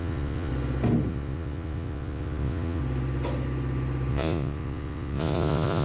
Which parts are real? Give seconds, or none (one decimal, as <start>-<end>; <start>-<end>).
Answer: 0.5-1.1; 2.8-4.1